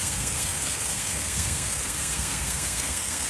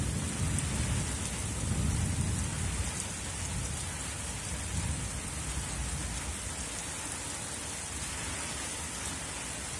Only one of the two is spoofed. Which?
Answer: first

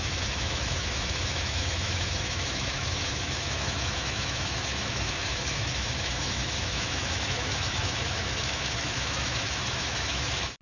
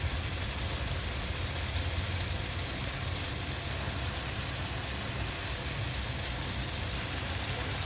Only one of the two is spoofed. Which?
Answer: first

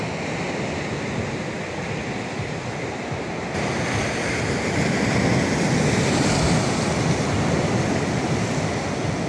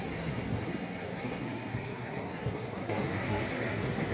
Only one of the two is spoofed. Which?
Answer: second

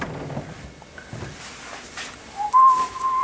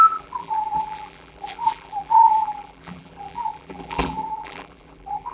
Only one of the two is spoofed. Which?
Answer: second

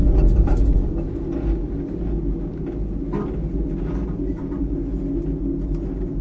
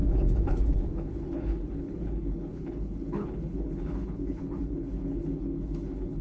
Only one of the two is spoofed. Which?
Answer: second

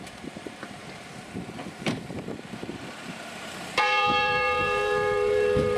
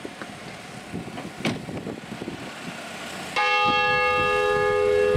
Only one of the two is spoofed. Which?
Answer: first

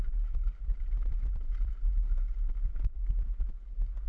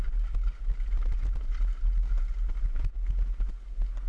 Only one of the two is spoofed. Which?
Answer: first